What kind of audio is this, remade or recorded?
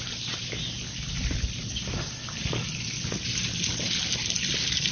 recorded